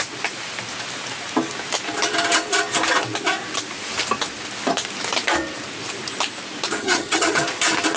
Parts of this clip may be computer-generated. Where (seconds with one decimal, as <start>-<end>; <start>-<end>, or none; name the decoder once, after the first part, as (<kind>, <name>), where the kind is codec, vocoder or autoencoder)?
6.8-7.4 (vocoder, HiFi-GAN)